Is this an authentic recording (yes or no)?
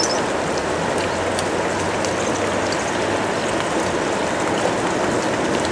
yes